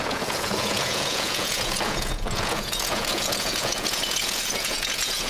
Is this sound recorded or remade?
remade